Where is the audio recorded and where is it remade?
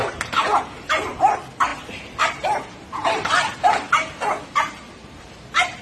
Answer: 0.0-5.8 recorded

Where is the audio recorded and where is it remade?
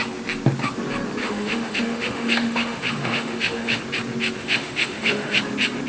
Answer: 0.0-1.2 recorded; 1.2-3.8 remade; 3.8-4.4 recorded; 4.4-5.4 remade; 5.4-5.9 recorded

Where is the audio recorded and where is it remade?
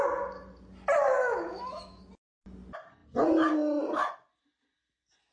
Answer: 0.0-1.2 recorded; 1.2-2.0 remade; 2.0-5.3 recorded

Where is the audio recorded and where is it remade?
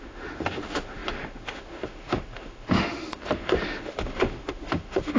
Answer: 0.0-5.2 remade